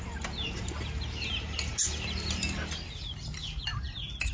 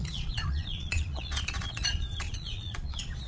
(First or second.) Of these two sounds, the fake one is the second